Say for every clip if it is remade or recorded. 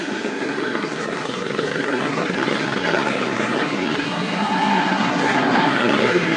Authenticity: remade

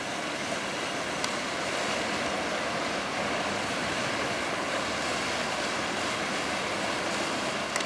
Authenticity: recorded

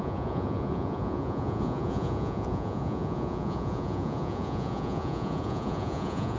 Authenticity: remade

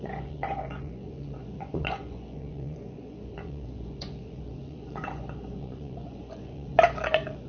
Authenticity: remade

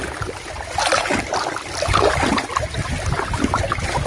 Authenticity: recorded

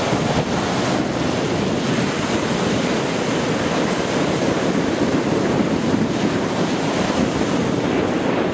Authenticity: recorded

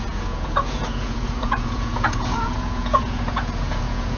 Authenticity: remade